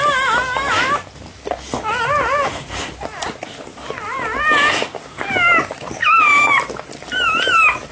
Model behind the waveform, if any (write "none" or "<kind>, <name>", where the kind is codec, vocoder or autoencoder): none